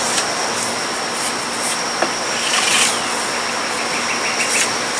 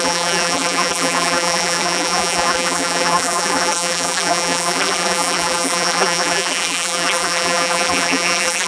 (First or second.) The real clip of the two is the first